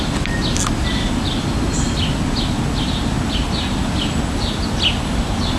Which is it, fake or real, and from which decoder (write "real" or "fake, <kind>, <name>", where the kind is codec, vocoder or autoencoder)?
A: real